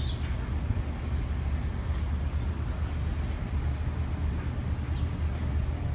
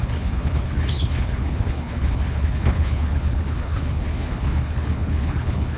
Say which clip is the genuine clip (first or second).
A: first